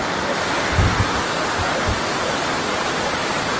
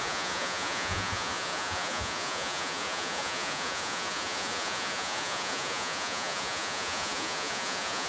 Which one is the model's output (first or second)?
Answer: second